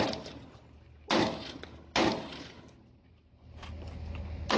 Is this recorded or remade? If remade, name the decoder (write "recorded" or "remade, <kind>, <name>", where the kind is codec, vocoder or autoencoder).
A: recorded